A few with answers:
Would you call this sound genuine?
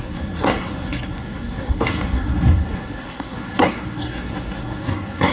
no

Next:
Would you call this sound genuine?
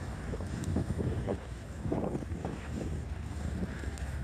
no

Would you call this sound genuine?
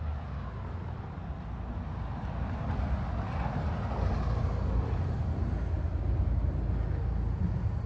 yes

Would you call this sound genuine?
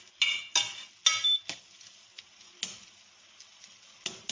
yes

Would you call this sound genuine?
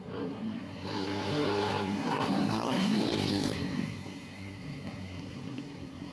no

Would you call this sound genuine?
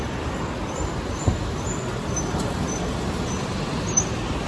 yes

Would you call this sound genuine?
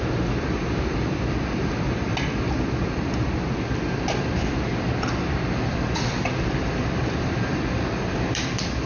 no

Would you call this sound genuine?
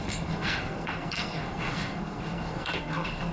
no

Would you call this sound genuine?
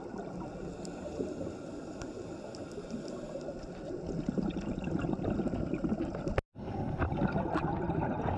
yes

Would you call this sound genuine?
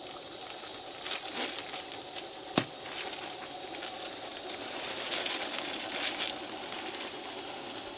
yes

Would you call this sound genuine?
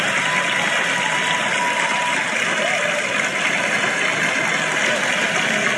yes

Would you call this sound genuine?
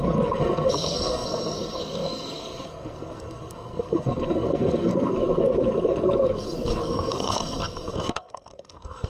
no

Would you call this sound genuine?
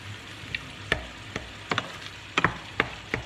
yes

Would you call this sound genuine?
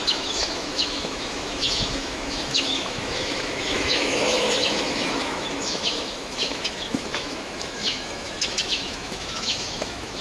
no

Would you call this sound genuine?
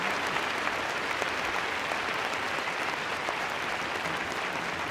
yes